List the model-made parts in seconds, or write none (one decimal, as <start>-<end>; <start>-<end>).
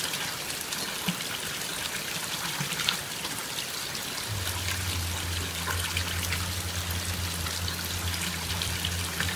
0.0-1.7; 2.2-3.4; 8.5-9.4